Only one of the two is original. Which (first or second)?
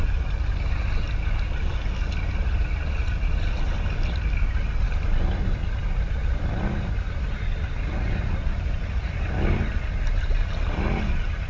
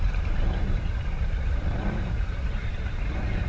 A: first